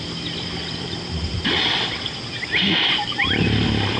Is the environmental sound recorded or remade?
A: remade